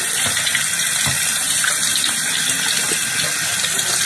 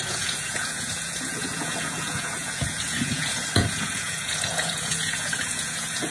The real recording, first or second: first